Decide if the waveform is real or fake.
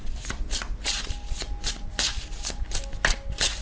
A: real